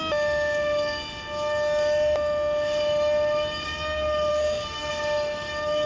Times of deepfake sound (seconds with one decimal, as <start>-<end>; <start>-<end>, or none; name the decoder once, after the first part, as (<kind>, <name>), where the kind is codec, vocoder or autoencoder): 4.3-4.9 (codec, SNAC)